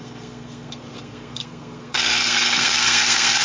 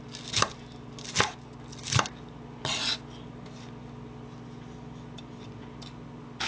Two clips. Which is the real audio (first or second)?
second